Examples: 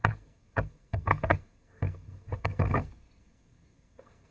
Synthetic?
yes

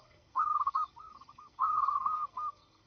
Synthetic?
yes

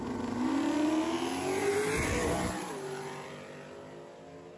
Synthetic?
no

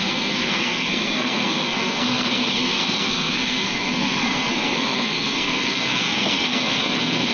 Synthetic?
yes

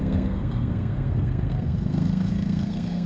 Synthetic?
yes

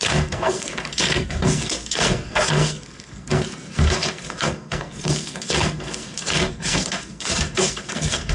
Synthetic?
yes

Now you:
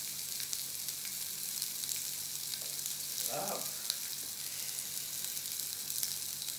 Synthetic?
no